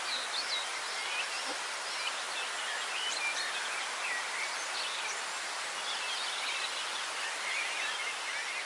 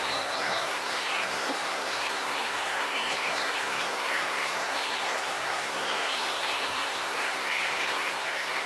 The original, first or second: first